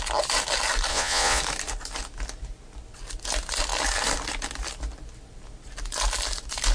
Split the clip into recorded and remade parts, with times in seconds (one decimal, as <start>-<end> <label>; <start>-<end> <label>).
0.0-0.9 recorded; 0.9-1.4 remade; 1.4-6.7 recorded